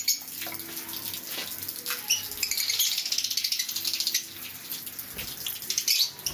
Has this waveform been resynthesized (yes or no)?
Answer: no